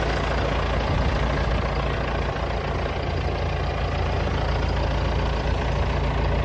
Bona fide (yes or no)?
yes